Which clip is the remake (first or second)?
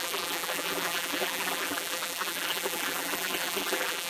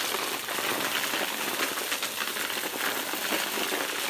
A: first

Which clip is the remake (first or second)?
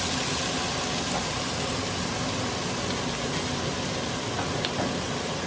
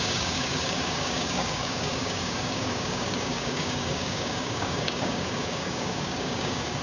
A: second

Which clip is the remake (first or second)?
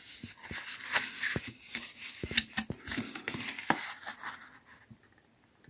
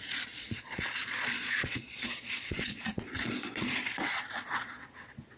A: second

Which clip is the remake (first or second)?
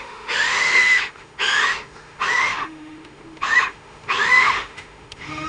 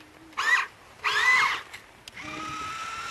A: first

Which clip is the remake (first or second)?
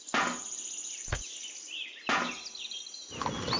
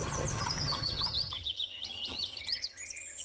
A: second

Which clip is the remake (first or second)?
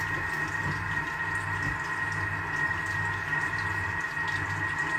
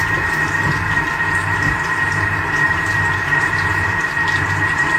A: second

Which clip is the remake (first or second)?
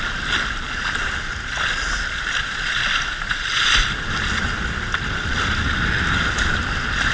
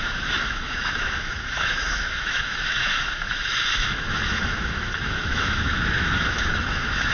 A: second